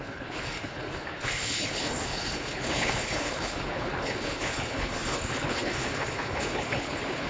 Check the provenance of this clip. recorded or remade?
remade